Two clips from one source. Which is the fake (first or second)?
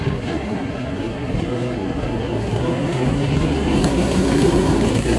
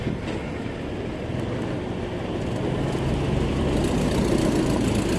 first